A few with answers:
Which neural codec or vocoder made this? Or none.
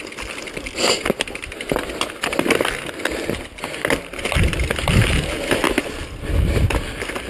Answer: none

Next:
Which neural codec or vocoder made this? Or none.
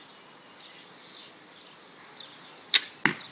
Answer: none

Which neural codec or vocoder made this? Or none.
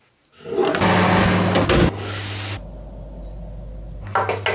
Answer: none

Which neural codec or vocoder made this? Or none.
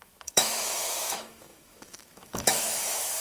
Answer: autoencoder, DAC-VAE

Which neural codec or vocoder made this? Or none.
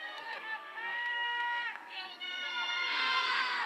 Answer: codec, SNAC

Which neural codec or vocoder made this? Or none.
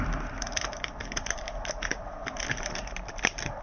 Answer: vocoder, BigVGAN v2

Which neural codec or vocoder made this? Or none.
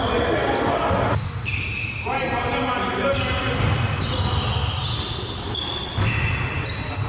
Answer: none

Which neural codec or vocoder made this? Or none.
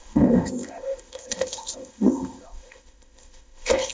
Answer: codec, ZipCodec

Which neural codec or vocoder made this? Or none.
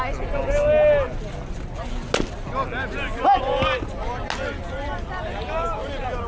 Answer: none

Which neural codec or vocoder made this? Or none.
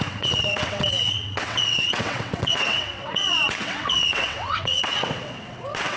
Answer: vocoder, WaveNeXt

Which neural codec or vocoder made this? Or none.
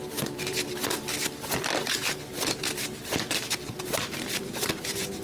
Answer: vocoder, BigVGAN v2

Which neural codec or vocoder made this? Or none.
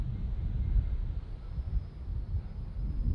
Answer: none